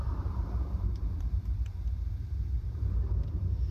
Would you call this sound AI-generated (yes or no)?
yes